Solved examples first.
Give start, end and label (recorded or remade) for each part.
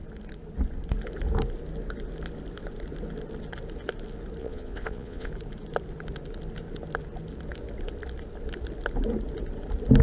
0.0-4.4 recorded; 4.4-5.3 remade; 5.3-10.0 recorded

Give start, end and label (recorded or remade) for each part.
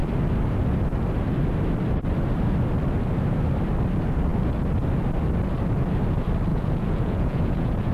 0.0-6.5 recorded; 6.5-7.9 remade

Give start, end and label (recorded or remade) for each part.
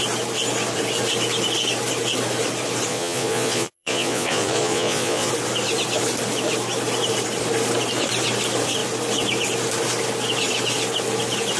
0.0-2.9 recorded; 2.9-5.3 remade; 5.3-11.6 recorded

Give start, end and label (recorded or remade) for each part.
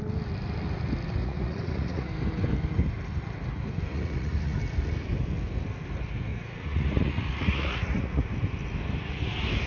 0.0-1.2 recorded; 1.2-2.1 remade; 2.1-3.9 recorded; 3.9-4.6 remade; 4.6-6.3 recorded; 6.3-8.3 remade; 8.3-9.7 recorded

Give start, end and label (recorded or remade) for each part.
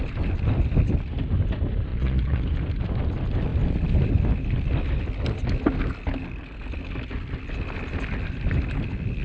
0.0-1.9 recorded; 1.9-2.4 remade; 2.4-9.2 recorded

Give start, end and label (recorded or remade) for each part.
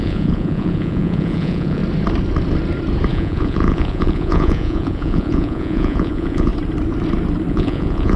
0.0-1.8 remade; 1.8-3.1 recorded; 3.1-6.5 remade; 6.5-7.5 recorded; 7.5-8.2 remade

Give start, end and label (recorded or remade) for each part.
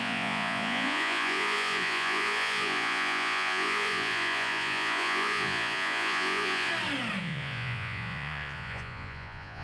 0.0-6.7 remade; 6.7-7.2 recorded; 7.2-9.6 remade